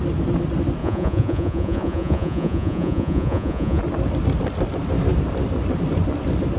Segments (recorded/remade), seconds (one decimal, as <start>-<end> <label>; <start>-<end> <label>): 0.0-0.8 recorded; 0.8-3.8 remade; 3.8-6.6 recorded